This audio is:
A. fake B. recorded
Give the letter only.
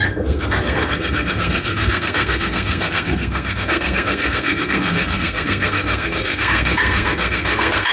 A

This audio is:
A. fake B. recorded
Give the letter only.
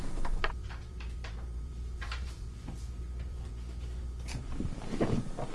A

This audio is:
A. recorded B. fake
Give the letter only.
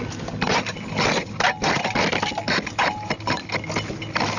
A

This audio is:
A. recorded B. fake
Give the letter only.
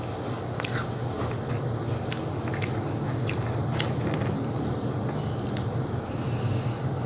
A